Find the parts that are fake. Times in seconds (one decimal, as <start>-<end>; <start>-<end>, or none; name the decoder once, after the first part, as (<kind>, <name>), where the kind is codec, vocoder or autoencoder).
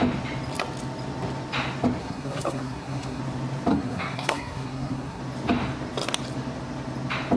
2.0-3.2 (codec, SNAC); 3.7-5.2